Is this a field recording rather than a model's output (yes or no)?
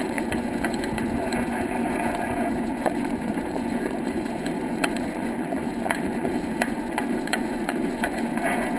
no